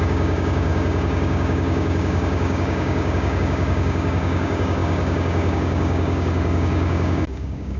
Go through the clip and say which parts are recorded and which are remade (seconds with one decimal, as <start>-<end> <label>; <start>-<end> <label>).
0.0-7.8 remade